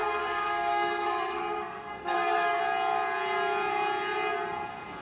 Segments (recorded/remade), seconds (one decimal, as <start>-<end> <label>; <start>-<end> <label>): 0.0-2.6 remade; 2.6-5.0 recorded